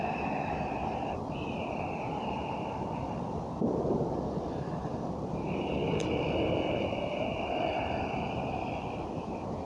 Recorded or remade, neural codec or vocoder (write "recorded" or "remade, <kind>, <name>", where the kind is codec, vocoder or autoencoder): remade, vocoder, BigVGAN v2